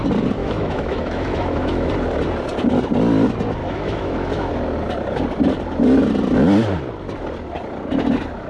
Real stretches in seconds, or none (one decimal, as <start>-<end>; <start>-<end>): 0.0-0.4; 1.9-3.6; 4.5-8.5